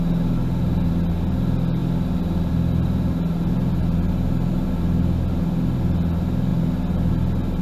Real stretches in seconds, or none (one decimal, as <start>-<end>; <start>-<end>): 0.0-7.6